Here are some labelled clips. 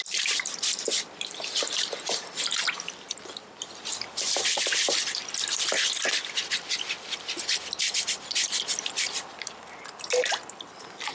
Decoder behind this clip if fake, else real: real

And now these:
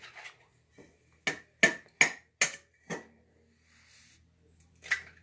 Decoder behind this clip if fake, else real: real